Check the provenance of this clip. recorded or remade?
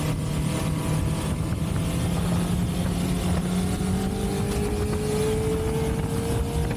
recorded